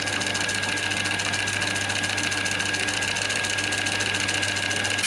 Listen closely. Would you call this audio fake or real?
real